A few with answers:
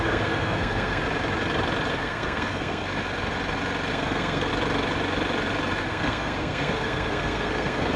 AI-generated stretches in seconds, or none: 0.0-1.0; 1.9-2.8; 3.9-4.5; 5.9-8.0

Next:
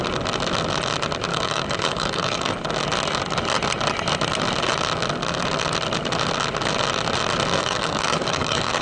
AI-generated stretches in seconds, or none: 1.3-2.5; 7.6-8.8

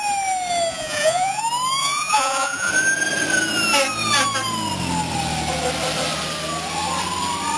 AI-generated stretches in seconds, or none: 0.7-1.4; 1.8-2.7

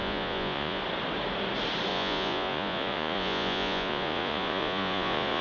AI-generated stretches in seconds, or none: 0.0-0.8; 1.9-5.4

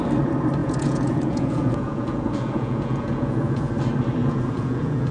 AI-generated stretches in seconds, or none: 0.6-3.7; 4.2-5.1